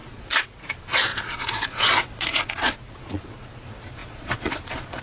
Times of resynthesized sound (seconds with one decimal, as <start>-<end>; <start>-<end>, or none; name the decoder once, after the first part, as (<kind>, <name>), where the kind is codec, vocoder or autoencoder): 0.0-5.0 (vocoder, Vocos)